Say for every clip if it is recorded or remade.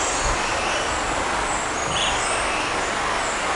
recorded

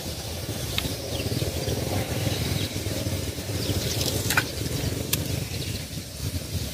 remade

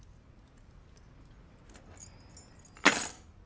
recorded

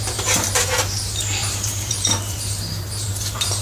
remade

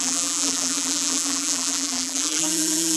remade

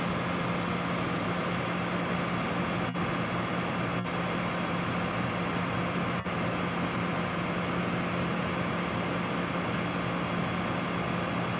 recorded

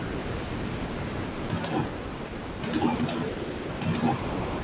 recorded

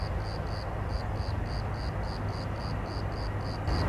recorded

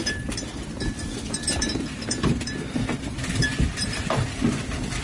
remade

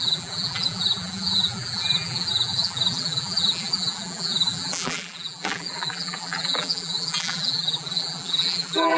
remade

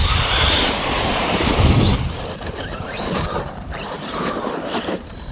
remade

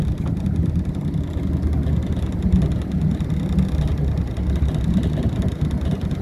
recorded